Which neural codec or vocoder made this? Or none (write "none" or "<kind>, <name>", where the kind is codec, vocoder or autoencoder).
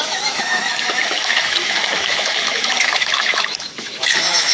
autoencoder, DAC-VAE